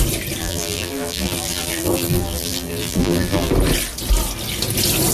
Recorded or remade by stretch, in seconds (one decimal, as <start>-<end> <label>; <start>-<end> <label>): 0.0-0.4 recorded; 0.4-3.5 remade; 3.5-5.1 recorded